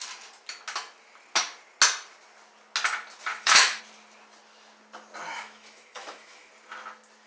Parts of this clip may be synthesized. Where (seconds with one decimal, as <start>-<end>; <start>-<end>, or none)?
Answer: 3.3-3.8; 5.3-6.5